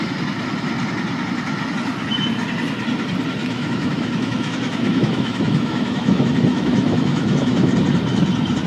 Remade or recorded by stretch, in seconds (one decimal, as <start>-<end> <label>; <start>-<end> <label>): 0.0-3.4 recorded; 3.4-7.7 remade; 7.7-8.7 recorded